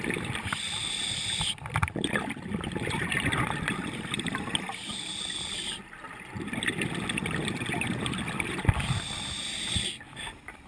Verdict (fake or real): real